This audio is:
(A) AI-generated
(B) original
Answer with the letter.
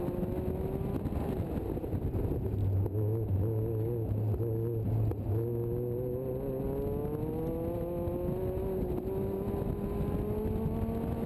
B